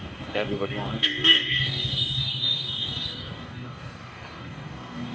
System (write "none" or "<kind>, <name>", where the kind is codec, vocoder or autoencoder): codec, DAC